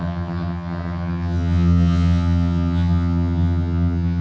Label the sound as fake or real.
fake